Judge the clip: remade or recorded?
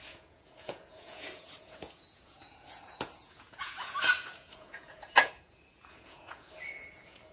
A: remade